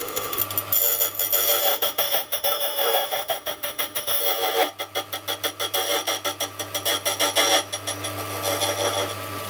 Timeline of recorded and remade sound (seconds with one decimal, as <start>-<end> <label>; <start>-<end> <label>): 0.0-0.4 remade; 0.4-1.6 recorded; 1.6-4.2 remade; 4.2-9.5 recorded